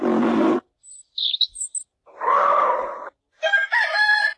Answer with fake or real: real